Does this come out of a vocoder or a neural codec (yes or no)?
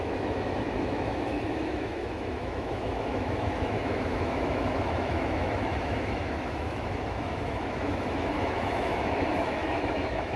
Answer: yes